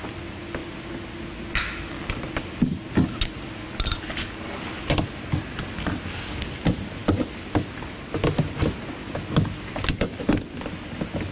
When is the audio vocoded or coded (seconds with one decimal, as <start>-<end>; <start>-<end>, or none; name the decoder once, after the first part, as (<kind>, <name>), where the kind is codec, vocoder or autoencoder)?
none